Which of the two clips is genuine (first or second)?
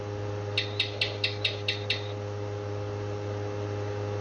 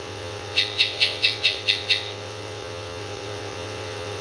first